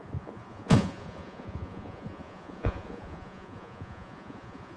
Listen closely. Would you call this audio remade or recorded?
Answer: remade